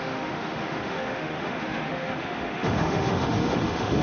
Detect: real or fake fake